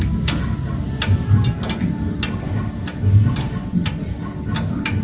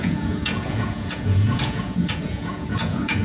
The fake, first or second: second